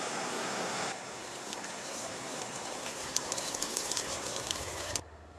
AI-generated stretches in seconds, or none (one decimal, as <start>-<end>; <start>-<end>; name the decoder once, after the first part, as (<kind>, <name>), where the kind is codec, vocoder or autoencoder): 0.0-5.4 (codec, SNAC)